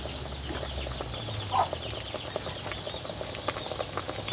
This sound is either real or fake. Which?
real